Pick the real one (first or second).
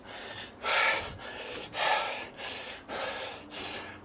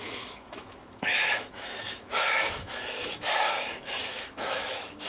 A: first